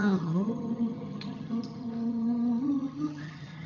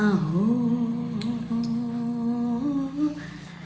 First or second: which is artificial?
first